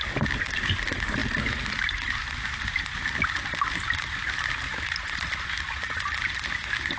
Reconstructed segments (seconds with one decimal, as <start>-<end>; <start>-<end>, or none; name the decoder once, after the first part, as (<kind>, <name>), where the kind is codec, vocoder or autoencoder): none